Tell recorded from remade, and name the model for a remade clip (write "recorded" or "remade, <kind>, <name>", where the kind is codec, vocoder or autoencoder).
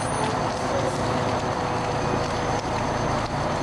recorded